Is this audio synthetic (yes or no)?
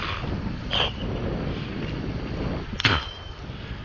no